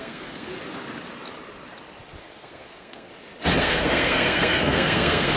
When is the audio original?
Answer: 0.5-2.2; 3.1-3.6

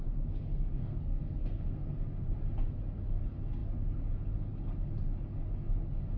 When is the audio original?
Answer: 0.0-0.8; 2.0-6.2

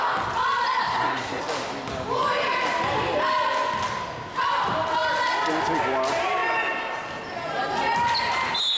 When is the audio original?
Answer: 0.0-0.8; 1.4-8.8

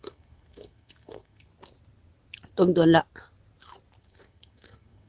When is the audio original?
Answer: 1.5-4.0